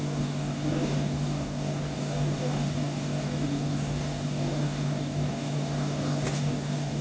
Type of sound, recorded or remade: remade